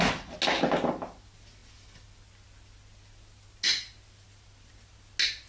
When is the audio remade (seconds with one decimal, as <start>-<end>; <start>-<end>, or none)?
none